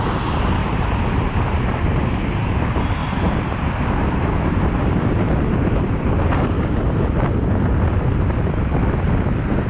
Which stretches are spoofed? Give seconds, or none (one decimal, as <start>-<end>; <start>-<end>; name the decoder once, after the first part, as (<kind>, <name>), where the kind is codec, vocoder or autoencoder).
0.6-2.2 (vocoder, BigVGAN v2); 3.0-6.1

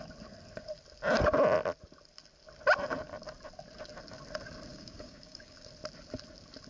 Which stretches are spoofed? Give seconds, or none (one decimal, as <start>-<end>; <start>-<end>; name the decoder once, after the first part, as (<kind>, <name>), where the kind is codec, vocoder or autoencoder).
4.7-5.7 (codec, DAC)

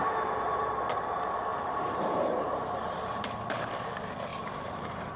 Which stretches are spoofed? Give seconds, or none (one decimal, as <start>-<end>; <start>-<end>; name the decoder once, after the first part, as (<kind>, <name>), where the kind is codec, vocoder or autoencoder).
1.5-3.2 (vocoder, BigVGAN v2); 4.3-5.2

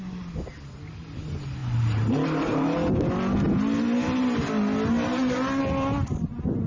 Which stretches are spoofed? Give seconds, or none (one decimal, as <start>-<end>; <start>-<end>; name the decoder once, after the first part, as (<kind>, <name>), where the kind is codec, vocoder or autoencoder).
none

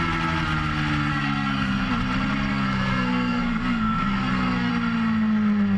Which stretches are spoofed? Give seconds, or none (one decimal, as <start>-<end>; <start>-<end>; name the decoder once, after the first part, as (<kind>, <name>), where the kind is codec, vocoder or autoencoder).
1.1-1.9 (codec, SNAC); 2.5-4.7